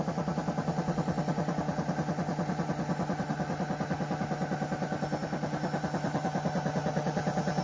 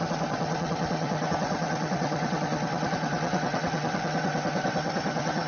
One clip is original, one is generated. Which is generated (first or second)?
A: second